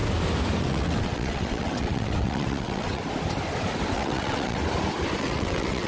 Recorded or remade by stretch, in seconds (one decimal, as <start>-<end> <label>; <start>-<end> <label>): 0.0-0.6 recorded; 0.6-3.0 remade; 3.0-3.9 recorded; 3.9-4.6 remade; 4.6-5.2 recorded; 5.2-5.9 remade

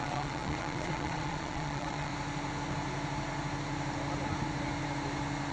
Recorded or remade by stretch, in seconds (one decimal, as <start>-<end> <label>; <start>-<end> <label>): 0.0-2.1 remade; 2.1-5.5 recorded